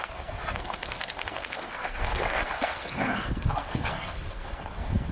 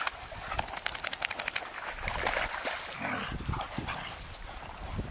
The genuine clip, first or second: second